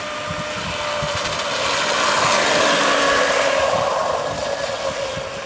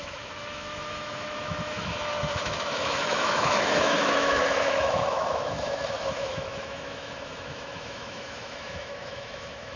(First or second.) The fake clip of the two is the second